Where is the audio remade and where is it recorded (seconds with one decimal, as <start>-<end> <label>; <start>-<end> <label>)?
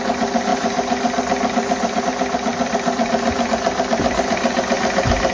0.0-2.5 recorded; 2.5-3.5 remade; 3.5-5.3 recorded